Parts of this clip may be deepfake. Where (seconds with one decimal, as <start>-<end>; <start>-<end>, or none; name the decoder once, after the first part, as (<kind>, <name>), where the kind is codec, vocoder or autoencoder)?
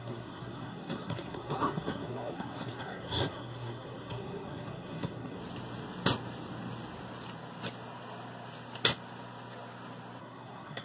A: 0.0-5.4 (codec, SNAC); 10.2-10.8